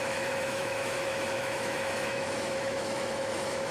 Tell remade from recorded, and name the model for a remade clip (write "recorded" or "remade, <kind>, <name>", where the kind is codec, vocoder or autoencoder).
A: remade, autoencoder, DAC-VAE